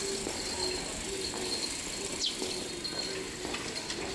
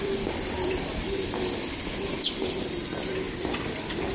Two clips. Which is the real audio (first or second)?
first